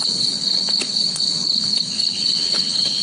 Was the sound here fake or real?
fake